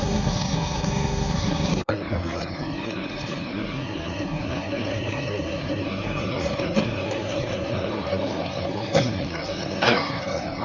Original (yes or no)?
no